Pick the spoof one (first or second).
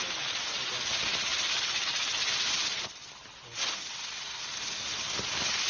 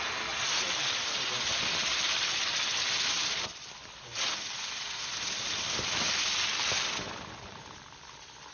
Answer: second